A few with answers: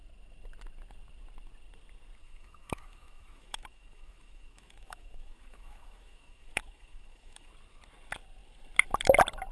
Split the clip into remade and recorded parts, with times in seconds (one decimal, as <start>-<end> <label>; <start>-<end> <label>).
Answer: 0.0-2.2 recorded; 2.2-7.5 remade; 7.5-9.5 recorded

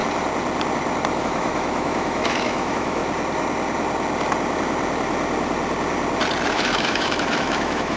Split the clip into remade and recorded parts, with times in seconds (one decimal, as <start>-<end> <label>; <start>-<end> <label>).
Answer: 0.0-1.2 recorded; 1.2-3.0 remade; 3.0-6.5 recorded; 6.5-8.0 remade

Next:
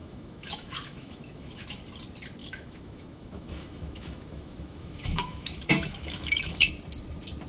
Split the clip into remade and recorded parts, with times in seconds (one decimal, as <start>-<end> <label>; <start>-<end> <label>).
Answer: 0.0-1.8 remade; 1.8-2.4 recorded; 2.4-6.7 remade; 6.7-7.5 recorded